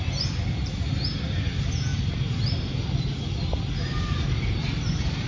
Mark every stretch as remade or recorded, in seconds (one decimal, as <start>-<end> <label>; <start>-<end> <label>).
0.0-5.3 recorded